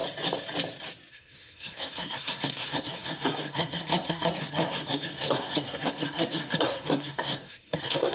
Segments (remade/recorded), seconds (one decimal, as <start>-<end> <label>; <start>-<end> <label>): 0.0-1.1 recorded; 1.1-8.1 remade